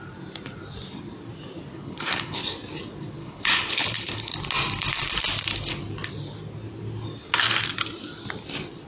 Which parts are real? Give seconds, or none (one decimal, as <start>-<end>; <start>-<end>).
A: 0.0-1.7; 2.4-3.2; 4.3-8.9